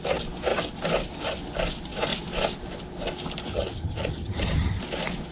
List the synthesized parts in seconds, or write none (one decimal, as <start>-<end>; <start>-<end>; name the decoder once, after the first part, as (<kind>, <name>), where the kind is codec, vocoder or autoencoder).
3.5-4.8 (vocoder, HiFi-GAN)